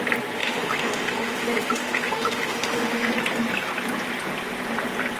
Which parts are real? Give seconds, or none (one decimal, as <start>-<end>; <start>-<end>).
0.0-0.4; 3.1-5.2